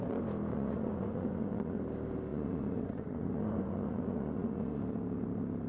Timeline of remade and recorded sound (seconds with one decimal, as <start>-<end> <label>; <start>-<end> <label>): 0.0-0.5 recorded; 0.5-1.8 remade; 1.8-2.3 recorded; 2.3-4.8 remade; 4.8-5.7 recorded